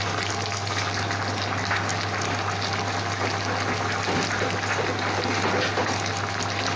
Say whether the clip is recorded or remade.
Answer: recorded